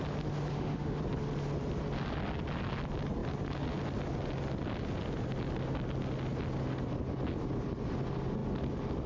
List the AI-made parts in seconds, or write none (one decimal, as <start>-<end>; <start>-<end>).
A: 0.5-1.0